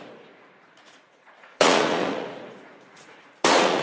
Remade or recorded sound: remade